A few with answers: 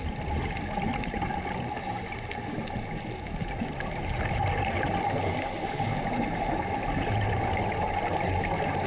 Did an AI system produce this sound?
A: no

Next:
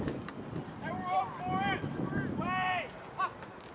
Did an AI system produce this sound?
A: no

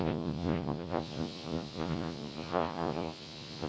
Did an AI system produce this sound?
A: yes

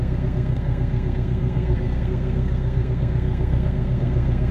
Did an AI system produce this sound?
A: yes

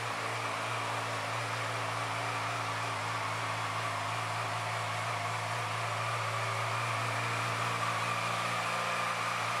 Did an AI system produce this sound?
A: no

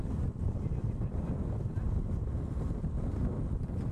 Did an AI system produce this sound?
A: no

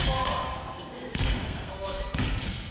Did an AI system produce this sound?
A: yes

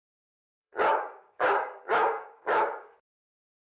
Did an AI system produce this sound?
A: yes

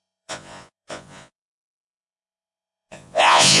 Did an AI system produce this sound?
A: yes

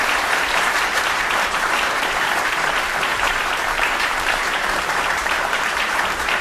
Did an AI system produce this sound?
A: yes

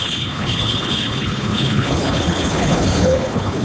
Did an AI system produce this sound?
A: yes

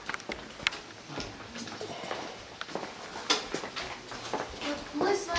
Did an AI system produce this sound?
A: no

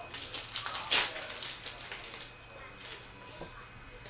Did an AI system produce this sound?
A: no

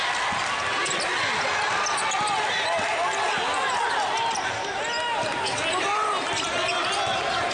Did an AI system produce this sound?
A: no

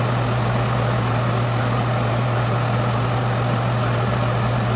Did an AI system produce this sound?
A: no